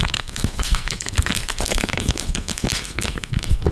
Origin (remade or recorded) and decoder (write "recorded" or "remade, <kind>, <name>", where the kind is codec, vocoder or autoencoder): remade, codec, SNAC